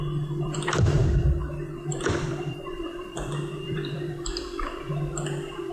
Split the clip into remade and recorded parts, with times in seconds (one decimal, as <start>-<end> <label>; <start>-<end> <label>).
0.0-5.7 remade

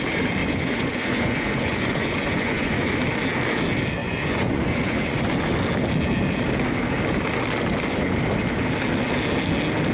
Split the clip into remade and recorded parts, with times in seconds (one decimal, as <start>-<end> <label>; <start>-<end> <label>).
0.0-0.4 recorded; 0.4-2.9 remade; 2.9-4.0 recorded; 4.0-5.2 remade; 5.2-9.9 recorded

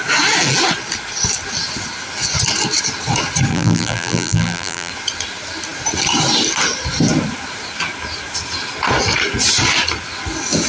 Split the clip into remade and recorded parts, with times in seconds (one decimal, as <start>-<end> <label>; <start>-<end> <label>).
0.0-3.5 recorded; 3.5-4.9 remade; 4.9-10.7 recorded